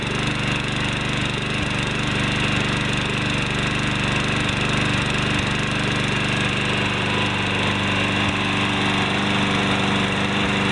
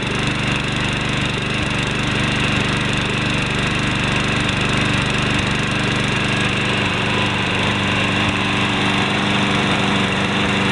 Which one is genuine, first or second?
first